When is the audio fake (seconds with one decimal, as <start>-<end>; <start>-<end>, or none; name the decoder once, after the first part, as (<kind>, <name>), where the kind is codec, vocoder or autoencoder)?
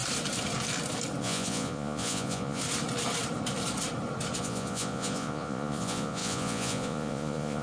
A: 1.2-2.6 (vocoder, Vocos); 4.4-7.6